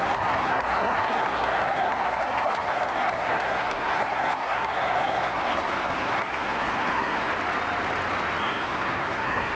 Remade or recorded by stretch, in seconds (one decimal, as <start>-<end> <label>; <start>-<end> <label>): 0.0-7.3 remade; 7.3-8.4 recorded; 8.4-9.5 remade

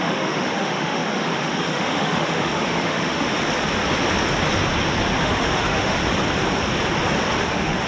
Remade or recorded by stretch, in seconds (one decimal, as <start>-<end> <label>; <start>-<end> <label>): 0.0-3.4 remade; 3.4-5.2 recorded; 5.2-6.0 remade; 6.0-7.5 recorded; 7.5-7.9 remade

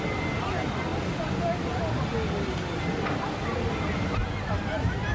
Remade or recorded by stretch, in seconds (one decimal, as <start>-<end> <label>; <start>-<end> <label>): 0.0-0.9 remade; 0.9-3.7 recorded; 3.7-4.2 remade; 4.2-5.1 recorded

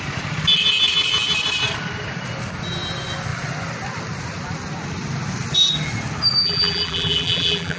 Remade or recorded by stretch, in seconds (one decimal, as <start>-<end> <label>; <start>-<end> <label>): 0.0-6.4 recorded; 6.4-7.8 remade

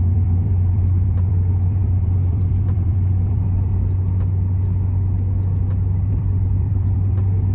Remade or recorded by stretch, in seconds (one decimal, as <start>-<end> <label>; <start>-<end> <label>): 0.0-3.7 remade; 3.7-6.1 recorded; 6.1-7.5 remade

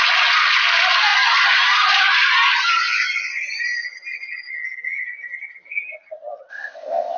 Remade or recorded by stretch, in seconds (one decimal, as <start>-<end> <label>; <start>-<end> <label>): 0.0-6.5 recorded; 6.5-7.2 remade

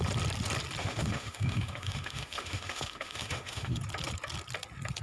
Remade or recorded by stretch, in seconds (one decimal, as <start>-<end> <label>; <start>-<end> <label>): 0.0-0.8 recorded; 0.8-3.8 remade; 3.8-5.0 recorded